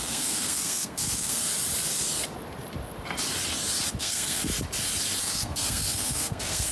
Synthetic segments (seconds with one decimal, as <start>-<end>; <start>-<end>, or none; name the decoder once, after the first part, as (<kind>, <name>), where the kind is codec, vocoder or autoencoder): 0.0-1.5 (codec, SNAC); 4.0-4.5; 5.2-6.7